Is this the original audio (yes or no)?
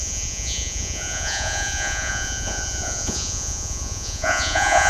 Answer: no